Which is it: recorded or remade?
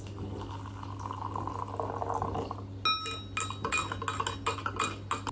recorded